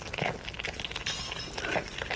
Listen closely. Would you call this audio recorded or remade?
recorded